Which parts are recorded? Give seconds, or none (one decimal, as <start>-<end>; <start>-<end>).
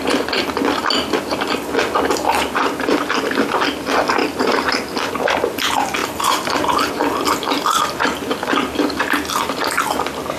0.0-4.2; 5.1-6.0; 6.9-10.4